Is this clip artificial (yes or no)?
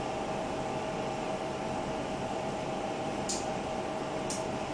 yes